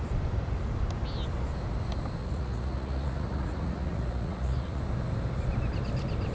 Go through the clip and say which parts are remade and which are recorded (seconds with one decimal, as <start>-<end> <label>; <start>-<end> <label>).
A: 0.0-2.2 recorded; 2.2-4.8 remade; 4.8-6.3 recorded